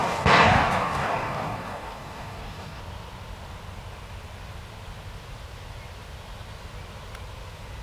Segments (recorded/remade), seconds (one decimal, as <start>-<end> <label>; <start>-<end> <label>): 0.0-2.8 remade; 2.8-7.8 recorded

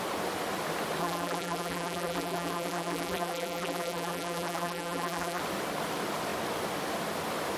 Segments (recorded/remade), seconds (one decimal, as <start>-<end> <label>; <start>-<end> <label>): 0.0-1.0 recorded; 1.0-5.4 remade; 5.4-7.6 recorded

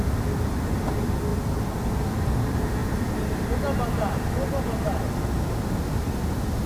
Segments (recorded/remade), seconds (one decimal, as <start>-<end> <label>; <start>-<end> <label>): 0.0-6.7 recorded

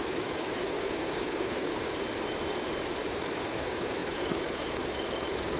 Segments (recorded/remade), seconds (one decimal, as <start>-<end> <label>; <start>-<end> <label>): 0.0-1.7 remade; 1.7-3.1 recorded; 3.1-5.6 remade

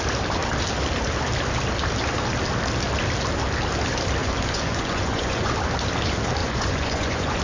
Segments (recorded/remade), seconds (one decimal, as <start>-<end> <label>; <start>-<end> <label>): 0.0-4.2 recorded; 4.2-5.5 remade; 5.5-6.4 recorded; 6.4-7.4 remade

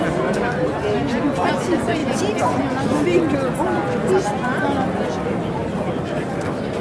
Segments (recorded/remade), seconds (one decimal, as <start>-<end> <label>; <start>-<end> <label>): 0.0-5.6 recorded; 5.6-6.8 remade